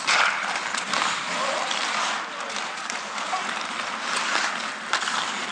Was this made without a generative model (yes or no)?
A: yes